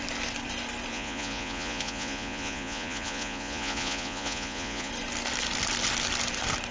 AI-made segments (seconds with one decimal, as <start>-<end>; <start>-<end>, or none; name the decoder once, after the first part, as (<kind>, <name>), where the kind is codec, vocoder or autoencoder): 0.9-4.9 (vocoder, Vocos)